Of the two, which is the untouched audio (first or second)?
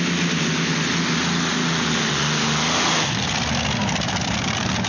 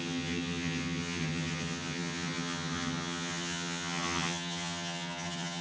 first